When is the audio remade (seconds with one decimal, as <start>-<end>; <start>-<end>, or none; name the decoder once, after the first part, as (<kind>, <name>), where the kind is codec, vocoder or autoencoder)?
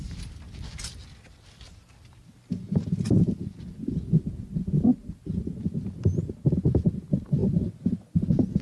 none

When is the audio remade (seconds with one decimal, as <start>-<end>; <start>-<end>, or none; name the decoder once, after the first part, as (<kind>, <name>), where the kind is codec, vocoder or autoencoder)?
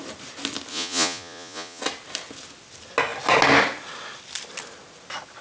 0.7-1.8 (vocoder, Vocos)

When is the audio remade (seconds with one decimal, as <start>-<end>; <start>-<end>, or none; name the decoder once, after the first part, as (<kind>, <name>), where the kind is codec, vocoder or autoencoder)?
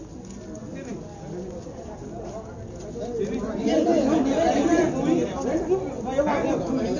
none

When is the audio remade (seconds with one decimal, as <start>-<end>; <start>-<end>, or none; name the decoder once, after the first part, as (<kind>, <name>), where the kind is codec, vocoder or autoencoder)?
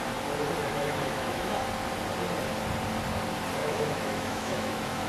0.6-1.6 (autoencoder, DAC-VAE); 3.6-5.1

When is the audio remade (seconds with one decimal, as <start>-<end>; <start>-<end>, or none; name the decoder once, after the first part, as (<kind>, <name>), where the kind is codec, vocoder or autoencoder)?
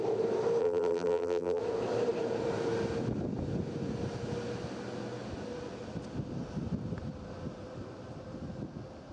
0.6-1.6 (vocoder, BigVGAN v2)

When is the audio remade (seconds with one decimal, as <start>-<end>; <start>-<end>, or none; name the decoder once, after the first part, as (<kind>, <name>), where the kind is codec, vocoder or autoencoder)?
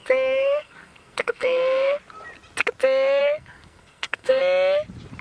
0.0-2.0 (codec, SNAC); 3.2-4.4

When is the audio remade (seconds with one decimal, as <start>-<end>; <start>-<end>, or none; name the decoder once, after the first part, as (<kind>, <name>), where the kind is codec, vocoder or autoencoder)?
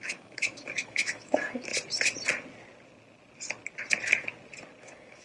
0.0-1.7 (autoencoder, DAC-VAE); 4.8-5.2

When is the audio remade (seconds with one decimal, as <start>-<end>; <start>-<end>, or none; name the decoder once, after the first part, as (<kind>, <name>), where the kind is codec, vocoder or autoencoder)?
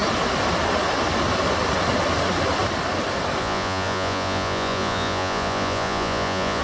3.4-6.6 (vocoder, Vocos)